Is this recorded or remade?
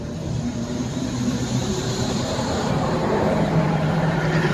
remade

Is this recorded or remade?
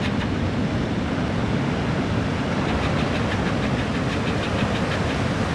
recorded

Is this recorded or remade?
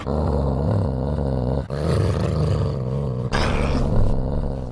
recorded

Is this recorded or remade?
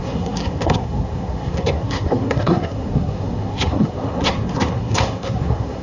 remade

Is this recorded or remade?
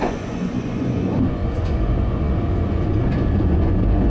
remade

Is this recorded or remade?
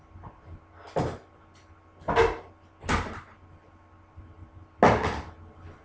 recorded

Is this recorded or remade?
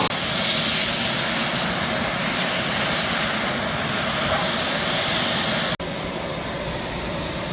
recorded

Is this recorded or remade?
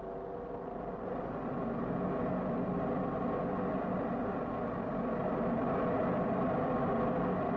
recorded